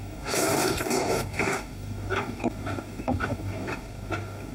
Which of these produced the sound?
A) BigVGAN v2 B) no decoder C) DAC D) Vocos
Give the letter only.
C